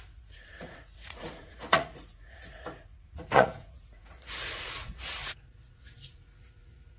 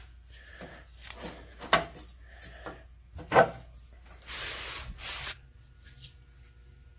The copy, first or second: first